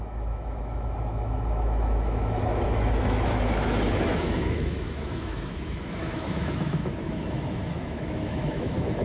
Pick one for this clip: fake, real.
fake